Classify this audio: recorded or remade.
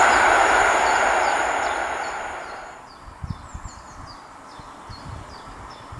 recorded